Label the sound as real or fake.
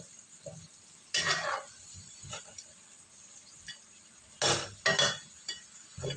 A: real